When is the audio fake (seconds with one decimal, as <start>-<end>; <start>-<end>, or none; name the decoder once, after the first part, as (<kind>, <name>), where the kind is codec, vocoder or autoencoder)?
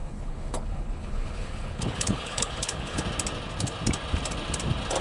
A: 0.0-3.0 (codec, HILCodec)